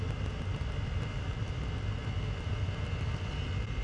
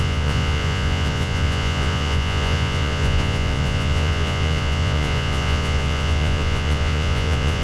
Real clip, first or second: first